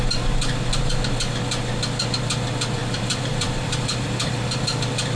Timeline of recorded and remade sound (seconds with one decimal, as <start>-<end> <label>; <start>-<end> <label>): 0.0-2.8 recorded; 2.8-5.2 remade